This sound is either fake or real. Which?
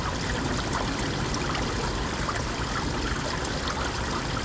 real